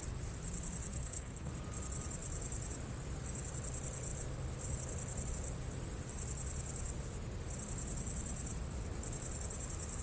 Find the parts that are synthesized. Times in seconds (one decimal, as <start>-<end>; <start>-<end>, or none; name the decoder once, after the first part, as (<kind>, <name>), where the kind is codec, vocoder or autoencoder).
0.9-1.5 (codec, SNAC)